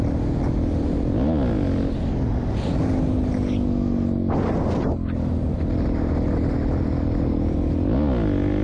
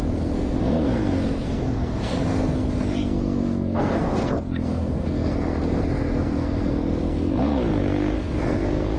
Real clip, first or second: first